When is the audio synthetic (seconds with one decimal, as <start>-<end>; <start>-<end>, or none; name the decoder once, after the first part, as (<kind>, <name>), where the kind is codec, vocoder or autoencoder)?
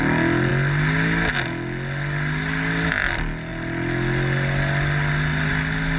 none